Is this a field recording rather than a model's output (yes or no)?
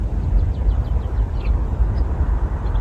yes